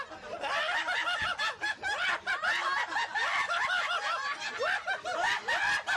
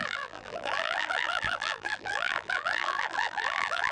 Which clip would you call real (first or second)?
first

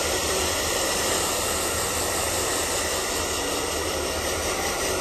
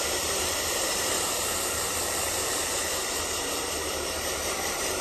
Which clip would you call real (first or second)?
first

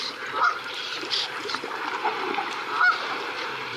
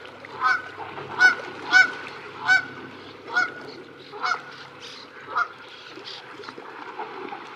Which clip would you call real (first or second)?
second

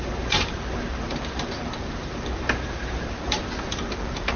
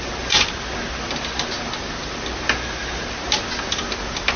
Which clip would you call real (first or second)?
second